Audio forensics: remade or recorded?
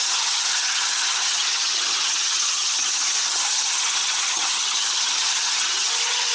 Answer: remade